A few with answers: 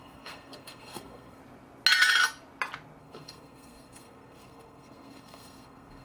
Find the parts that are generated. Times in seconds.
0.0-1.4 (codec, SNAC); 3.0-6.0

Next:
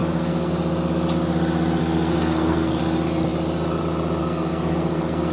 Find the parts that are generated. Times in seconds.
0.0-0.5 (codec, SNAC); 1.8-2.8; 4.2-5.3

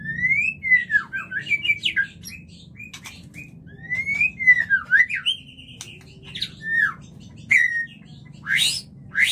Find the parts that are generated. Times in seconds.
none

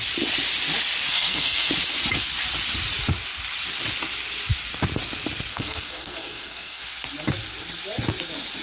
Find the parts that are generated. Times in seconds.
1.1-1.7 (codec, SNAC); 5.5-6.8

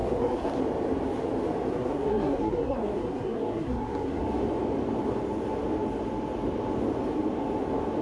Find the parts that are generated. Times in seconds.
0.0-0.6 (codec, SNAC); 1.7-4.2